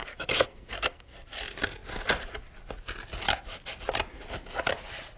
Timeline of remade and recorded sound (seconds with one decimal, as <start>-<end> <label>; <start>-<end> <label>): 0.0-1.3 remade; 1.3-5.2 recorded